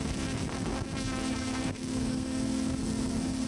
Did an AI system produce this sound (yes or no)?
yes